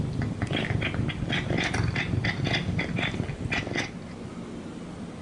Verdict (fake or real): real